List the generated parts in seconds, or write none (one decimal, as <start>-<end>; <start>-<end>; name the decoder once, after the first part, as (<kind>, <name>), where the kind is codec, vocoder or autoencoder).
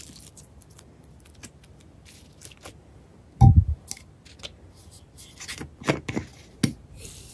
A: none